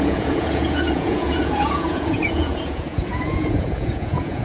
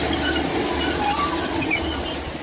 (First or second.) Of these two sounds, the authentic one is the second